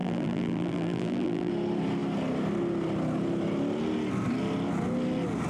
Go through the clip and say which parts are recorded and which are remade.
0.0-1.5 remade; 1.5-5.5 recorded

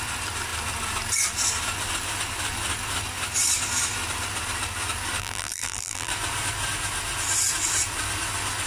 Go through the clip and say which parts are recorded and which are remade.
0.0-5.2 recorded; 5.2-6.1 remade; 6.1-8.7 recorded

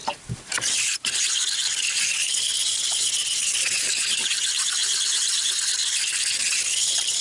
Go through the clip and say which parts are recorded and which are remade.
0.0-0.5 recorded; 0.5-7.2 remade

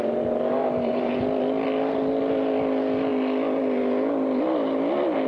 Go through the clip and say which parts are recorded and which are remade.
0.0-0.6 recorded; 0.6-1.1 remade; 1.1-5.3 recorded